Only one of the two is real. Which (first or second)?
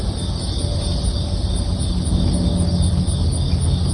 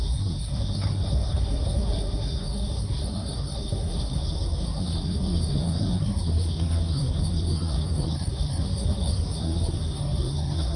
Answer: first